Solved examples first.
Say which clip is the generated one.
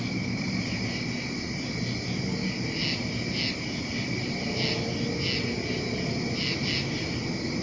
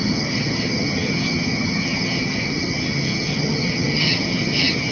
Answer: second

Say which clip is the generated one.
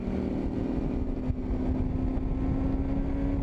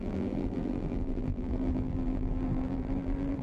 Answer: second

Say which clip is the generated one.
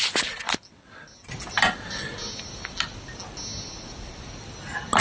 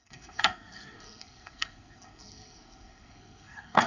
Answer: second